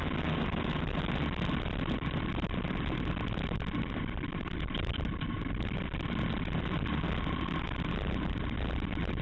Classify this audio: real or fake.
real